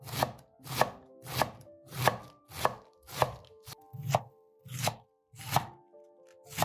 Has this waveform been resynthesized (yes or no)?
no